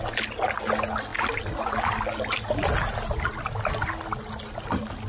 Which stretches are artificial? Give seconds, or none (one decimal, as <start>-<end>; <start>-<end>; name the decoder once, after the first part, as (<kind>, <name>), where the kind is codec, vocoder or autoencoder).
none